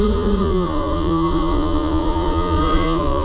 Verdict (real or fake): fake